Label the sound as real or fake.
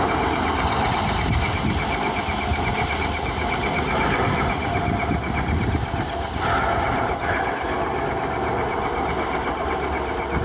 real